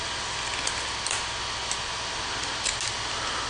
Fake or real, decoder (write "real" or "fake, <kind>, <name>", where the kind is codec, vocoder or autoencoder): real